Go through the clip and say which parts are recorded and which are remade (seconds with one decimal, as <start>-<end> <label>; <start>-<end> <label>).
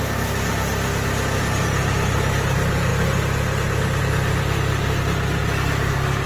0.0-5.4 recorded; 5.4-6.3 remade